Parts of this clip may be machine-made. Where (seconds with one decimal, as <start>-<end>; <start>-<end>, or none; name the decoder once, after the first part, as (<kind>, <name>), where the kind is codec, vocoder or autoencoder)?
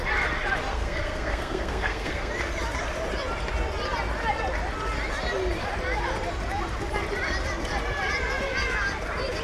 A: 0.7-2.3 (codec, SNAC)